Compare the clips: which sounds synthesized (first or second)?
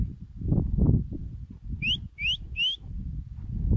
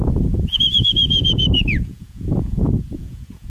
second